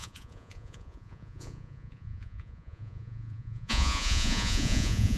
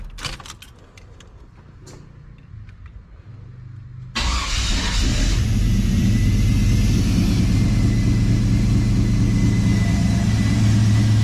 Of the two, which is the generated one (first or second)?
first